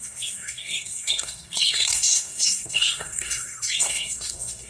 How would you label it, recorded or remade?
remade